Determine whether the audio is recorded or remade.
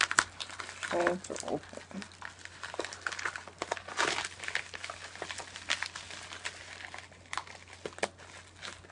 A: recorded